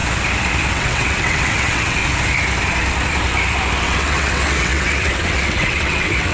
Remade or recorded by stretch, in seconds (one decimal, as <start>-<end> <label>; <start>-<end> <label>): 0.0-0.7 recorded; 0.7-2.0 remade; 2.0-3.8 recorded; 3.8-6.3 remade